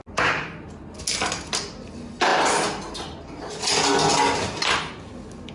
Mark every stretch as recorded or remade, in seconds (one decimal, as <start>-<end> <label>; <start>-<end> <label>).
0.0-5.5 recorded

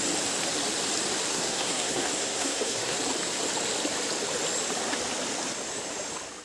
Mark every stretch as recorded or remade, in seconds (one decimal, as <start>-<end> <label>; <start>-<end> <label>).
0.0-1.3 recorded; 1.3-3.0 remade; 3.0-6.4 recorded

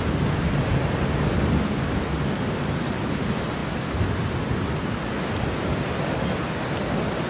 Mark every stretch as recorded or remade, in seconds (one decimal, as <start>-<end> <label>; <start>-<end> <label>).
0.0-7.3 recorded

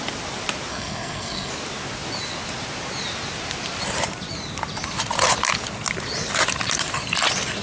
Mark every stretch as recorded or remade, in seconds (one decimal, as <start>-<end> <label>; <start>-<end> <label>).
0.0-0.7 recorded; 0.7-1.5 remade; 1.5-7.6 recorded